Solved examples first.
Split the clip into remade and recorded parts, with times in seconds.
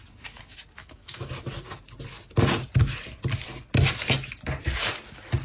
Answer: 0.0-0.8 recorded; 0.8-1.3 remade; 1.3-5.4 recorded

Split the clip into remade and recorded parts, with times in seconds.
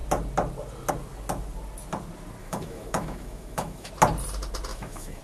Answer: 0.0-2.4 recorded; 2.4-3.9 remade; 3.9-4.7 recorded; 4.7-5.2 remade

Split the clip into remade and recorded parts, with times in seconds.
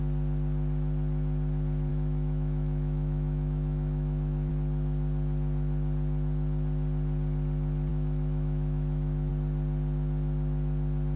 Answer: 0.0-1.9 recorded; 1.9-4.5 remade; 4.5-7.9 recorded; 7.9-9.3 remade; 9.3-11.2 recorded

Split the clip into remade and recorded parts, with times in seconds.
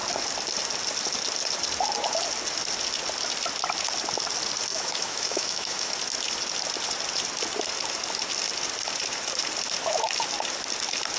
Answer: 0.0-4.7 recorded; 4.7-5.9 remade; 5.9-11.2 recorded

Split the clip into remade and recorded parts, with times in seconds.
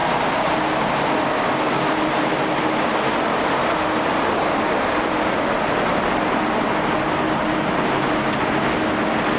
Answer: 0.0-9.4 recorded